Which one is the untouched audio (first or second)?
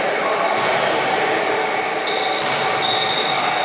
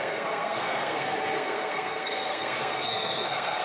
first